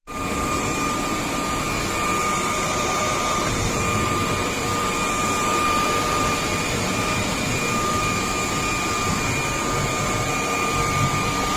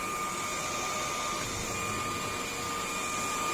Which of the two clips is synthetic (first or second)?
first